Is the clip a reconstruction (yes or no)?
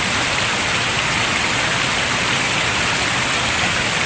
no